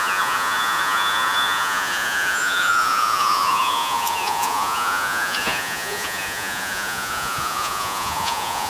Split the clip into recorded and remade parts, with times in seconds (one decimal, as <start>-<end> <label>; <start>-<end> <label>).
0.0-8.7 remade